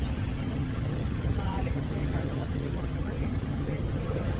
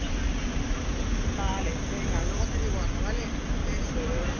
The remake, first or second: first